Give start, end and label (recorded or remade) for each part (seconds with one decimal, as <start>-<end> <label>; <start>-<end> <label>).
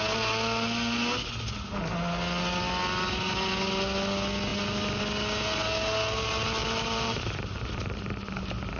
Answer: 0.0-6.6 recorded; 6.6-8.4 remade; 8.4-8.8 recorded